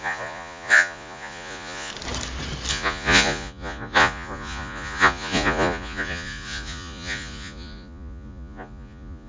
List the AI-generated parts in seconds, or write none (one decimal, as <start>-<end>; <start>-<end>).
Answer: 0.0-1.9; 2.7-9.3